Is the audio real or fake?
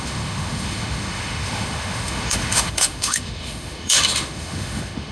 fake